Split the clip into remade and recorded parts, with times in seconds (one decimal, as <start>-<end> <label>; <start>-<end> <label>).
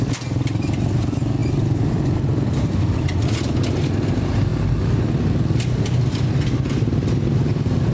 0.0-1.4 recorded; 1.4-3.9 remade; 3.9-7.9 recorded